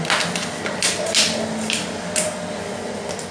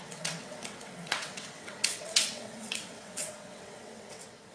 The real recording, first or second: first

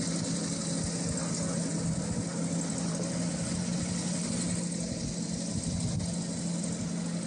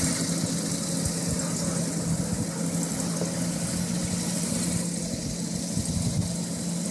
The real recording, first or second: first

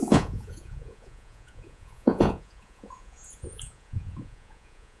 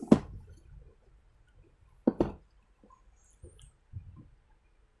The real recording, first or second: second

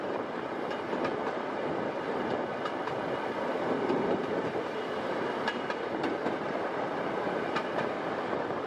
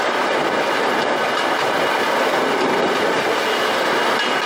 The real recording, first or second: second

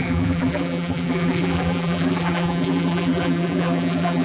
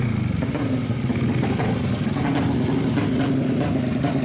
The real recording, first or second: second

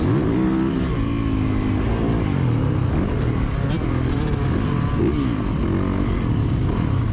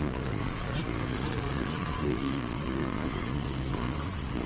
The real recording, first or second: first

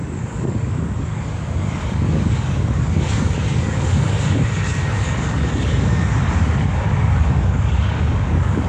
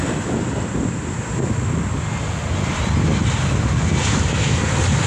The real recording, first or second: second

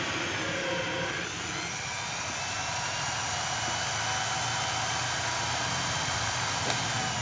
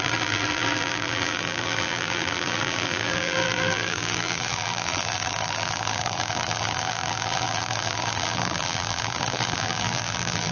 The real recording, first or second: first